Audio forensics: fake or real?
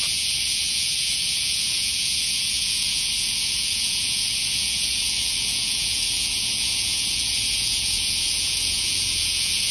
fake